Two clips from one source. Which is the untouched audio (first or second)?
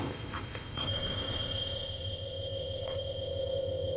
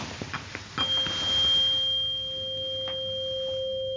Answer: second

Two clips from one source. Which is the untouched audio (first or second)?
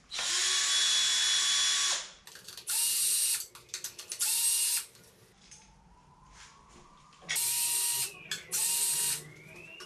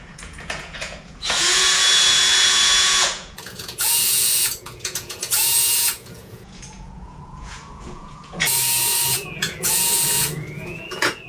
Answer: first